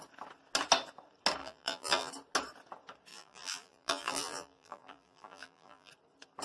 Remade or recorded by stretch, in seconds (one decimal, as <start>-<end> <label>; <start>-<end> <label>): 0.0-1.4 recorded; 1.4-2.1 remade; 2.1-3.1 recorded; 3.1-5.9 remade; 5.9-6.4 recorded